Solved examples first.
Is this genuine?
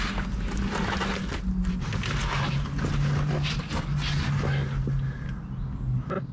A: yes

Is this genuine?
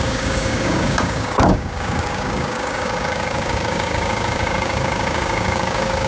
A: no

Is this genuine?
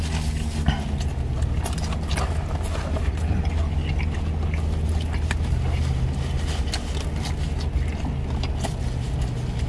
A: yes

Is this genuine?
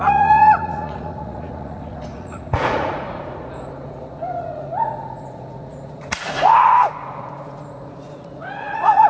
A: no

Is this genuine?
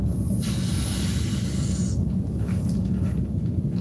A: yes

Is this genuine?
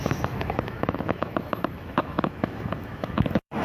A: no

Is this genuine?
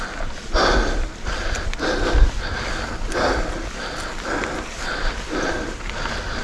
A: yes